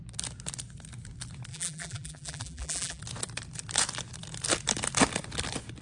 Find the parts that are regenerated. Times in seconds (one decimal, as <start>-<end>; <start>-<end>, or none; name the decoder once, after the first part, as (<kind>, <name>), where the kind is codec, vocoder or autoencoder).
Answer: 1.5-3.0 (vocoder, BigVGAN v2)